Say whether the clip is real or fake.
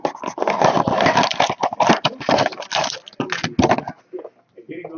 real